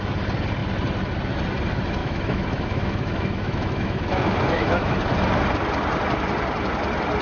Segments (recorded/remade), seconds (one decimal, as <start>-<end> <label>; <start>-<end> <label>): 0.0-2.0 recorded; 2.0-5.0 remade; 5.0-7.2 recorded